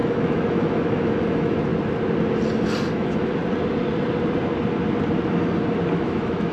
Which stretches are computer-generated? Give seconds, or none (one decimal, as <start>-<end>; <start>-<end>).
0.0-1.7; 2.9-3.4; 5.9-6.5